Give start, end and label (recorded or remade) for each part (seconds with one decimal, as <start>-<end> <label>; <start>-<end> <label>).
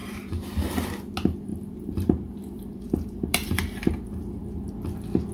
0.0-0.9 remade; 0.9-1.5 recorded; 1.5-4.7 remade; 4.7-5.3 recorded